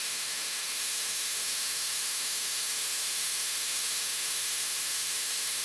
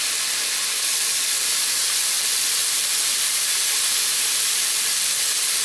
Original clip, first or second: second